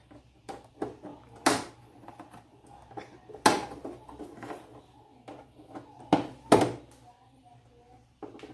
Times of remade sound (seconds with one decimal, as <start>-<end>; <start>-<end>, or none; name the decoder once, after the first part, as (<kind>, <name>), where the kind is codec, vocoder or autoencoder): none